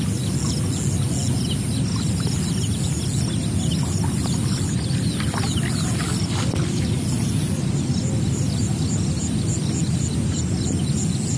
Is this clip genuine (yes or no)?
yes